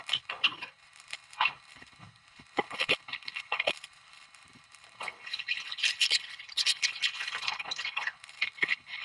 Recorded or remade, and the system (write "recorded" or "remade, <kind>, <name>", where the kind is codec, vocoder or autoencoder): remade, codec, HILCodec